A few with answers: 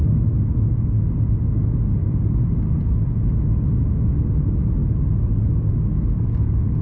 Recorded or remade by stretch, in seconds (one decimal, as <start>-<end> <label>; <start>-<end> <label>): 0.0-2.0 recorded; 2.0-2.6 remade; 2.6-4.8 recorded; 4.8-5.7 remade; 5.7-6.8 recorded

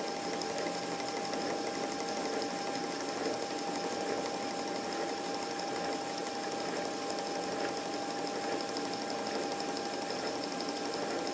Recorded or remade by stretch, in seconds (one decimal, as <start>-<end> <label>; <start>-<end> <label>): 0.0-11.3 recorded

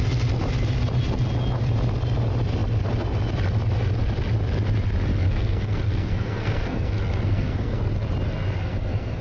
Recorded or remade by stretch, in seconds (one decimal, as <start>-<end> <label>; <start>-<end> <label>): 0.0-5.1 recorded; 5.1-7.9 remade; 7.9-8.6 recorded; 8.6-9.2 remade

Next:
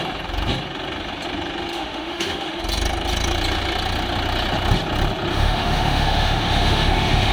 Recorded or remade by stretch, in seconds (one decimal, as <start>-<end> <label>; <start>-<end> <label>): 0.0-1.7 recorded; 1.7-2.6 remade; 2.6-5.3 recorded; 5.3-7.3 remade